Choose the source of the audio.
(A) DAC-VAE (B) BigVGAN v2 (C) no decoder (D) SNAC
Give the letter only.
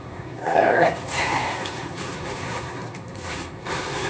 D